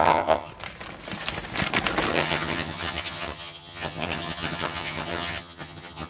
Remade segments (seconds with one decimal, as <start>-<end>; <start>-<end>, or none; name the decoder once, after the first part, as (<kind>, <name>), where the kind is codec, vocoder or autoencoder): 0.0-0.5 (vocoder, HiFi-GAN); 2.1-6.1

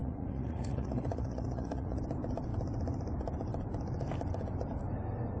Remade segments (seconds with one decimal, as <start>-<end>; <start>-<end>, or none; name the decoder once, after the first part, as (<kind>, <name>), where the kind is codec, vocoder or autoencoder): 0.0-2.0 (vocoder, Vocos)

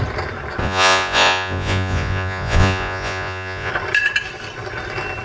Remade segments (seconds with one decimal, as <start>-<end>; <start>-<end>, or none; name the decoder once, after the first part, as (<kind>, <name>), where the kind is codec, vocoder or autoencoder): 0.6-3.7 (vocoder, Vocos)

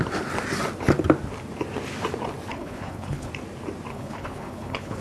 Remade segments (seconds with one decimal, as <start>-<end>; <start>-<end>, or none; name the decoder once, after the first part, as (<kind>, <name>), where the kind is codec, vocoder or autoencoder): 2.5-3.3 (codec, HILCodec); 3.9-5.0

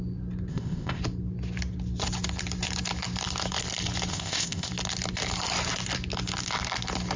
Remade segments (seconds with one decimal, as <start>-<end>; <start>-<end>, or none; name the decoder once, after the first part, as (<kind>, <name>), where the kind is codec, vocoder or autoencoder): 0.5-1.0 (codec, ZipCodec); 4.1-4.7

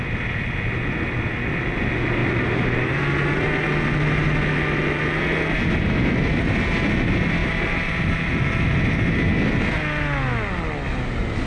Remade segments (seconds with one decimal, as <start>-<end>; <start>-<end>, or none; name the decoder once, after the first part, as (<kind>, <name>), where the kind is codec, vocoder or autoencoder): 2.2-3.0 (vocoder, BigVGAN v2); 7.4-8.3

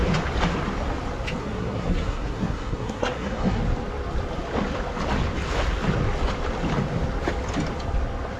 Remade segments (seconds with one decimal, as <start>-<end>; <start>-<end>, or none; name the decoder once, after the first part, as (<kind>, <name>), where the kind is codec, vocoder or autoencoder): 1.4-3.6 (codec, SNAC)

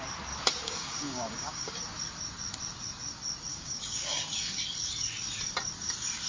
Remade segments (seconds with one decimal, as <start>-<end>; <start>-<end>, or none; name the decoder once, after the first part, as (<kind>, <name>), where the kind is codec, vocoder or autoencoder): 0.6-1.8 (codec, DAC); 3.5-4.6